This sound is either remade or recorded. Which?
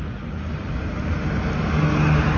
recorded